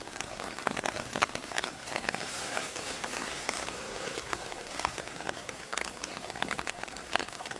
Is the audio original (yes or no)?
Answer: no